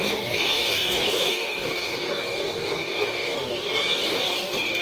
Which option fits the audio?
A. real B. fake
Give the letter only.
B